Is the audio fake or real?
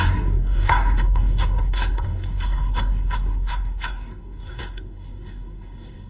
fake